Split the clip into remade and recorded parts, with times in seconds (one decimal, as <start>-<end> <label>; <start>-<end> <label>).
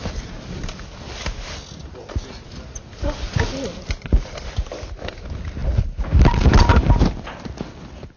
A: 0.0-1.8 recorded; 1.8-2.8 remade; 2.8-8.2 recorded